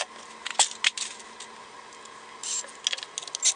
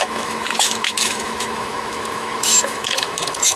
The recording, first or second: first